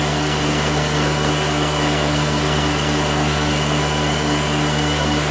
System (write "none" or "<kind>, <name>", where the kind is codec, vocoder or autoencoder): codec, SNAC